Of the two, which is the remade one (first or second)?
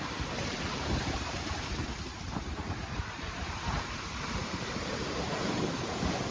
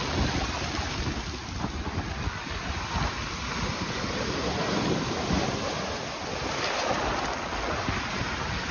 first